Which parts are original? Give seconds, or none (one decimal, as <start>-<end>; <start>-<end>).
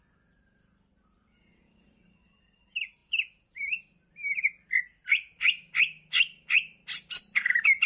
0.0-7.9